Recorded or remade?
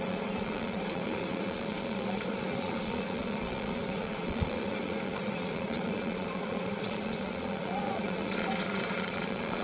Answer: remade